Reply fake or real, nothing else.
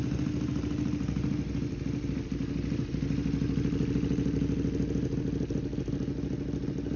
real